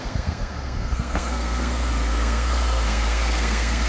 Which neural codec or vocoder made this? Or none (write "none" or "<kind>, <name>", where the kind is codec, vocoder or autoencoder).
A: codec, SNAC